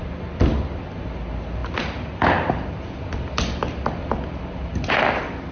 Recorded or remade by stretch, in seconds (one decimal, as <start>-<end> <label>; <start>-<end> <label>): 0.0-1.6 recorded; 1.6-4.9 remade; 4.9-5.5 recorded